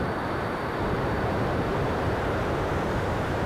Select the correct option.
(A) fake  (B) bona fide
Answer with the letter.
A